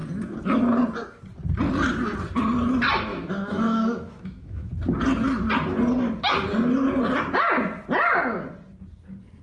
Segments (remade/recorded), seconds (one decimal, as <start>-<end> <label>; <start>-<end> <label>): 0.0-3.1 recorded; 3.1-4.7 remade; 4.7-9.4 recorded